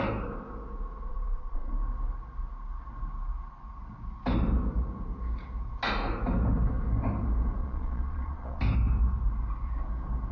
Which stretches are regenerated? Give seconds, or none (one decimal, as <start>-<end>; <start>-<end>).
1.1-1.7; 7.6-8.6